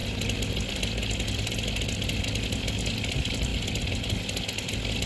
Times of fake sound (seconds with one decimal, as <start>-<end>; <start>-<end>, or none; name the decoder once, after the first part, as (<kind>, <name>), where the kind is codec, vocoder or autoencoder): 3.1-3.5 (vocoder, BigVGAN v2)